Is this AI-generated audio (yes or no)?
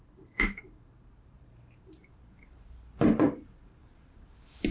yes